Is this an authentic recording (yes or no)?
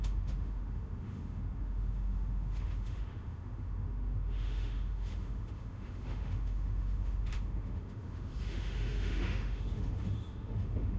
no